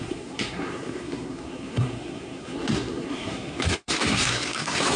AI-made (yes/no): yes